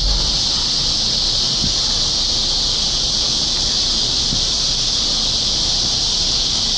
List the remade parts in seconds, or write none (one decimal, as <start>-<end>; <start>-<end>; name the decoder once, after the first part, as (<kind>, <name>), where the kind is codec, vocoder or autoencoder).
3.3-4.2 (vocoder, BigVGAN v2)